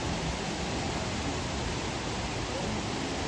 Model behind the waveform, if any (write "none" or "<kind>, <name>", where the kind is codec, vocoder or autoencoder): none